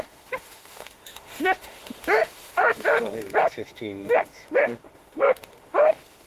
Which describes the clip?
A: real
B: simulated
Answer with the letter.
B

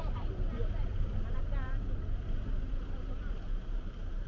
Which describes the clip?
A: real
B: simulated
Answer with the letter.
B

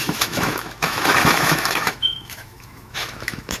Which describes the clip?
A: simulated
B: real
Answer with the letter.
A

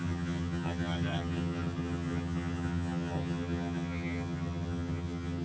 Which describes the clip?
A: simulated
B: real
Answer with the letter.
A